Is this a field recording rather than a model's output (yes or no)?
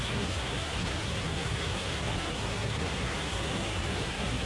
no